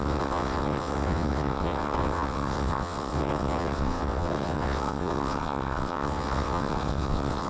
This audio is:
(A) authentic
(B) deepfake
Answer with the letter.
B